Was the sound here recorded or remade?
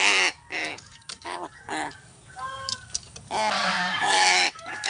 remade